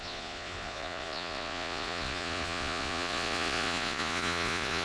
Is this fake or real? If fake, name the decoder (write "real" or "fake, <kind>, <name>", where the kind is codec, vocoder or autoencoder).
fake, vocoder, Vocos